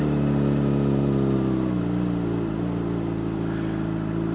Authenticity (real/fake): real